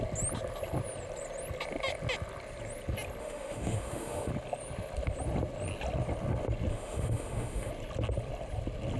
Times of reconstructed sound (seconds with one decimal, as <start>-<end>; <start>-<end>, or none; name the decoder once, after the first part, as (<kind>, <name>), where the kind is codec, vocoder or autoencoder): 3.2-4.3 (autoencoder, DAC-VAE); 6.7-7.7